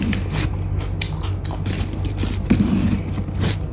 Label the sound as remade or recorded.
recorded